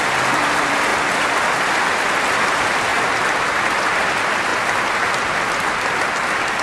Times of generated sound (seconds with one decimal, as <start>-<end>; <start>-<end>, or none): 0.0-0.9; 2.0-2.9; 3.7-4.5; 5.7-6.6